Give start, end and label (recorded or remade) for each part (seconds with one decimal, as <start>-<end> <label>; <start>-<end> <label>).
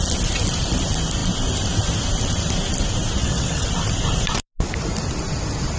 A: 0.0-3.2 recorded; 3.2-3.7 remade; 3.7-5.8 recorded